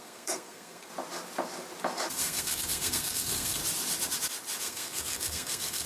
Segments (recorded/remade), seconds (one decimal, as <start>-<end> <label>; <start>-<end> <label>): 0.0-0.9 remade; 0.9-2.1 recorded; 2.1-3.6 remade; 3.6-4.6 recorded; 4.6-5.9 remade